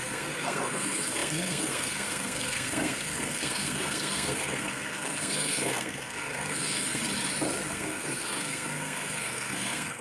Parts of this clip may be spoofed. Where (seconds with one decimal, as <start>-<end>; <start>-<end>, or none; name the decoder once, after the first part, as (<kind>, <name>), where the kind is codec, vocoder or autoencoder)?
0.0-7.0 (codec, SNAC); 7.7-10.0